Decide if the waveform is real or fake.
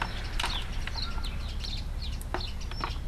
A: real